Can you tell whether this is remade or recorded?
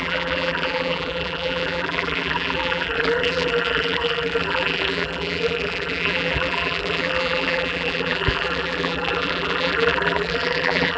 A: remade